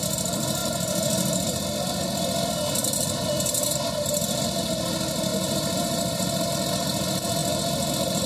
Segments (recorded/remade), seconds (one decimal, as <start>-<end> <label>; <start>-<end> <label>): 0.0-5.3 recorded; 5.3-6.5 remade; 6.5-8.3 recorded